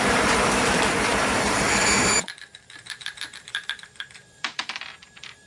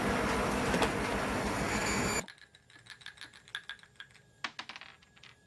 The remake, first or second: first